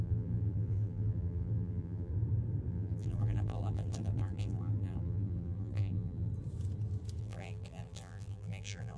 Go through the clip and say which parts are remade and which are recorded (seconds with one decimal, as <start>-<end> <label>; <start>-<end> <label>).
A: 0.0-2.1 remade; 2.1-2.7 recorded; 2.7-6.3 remade; 6.3-7.2 recorded; 7.2-9.0 remade